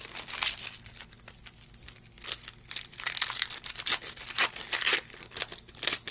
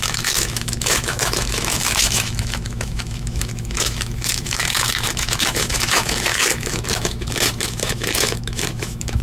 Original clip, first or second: first